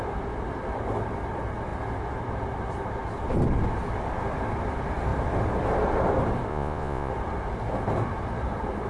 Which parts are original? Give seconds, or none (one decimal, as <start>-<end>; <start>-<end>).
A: 0.0-6.5; 7.1-8.9